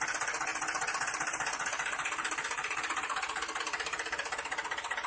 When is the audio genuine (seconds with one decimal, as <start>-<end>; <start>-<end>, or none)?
0.0-0.5; 3.6-5.1